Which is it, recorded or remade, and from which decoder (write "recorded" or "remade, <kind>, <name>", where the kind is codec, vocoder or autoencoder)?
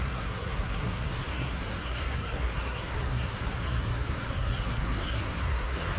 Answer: remade, codec, SNAC